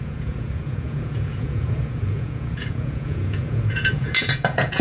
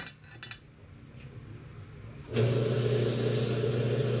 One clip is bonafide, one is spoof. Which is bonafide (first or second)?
second